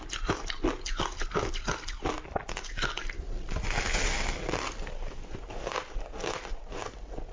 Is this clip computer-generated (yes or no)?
no